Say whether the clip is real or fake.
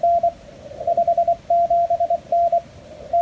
real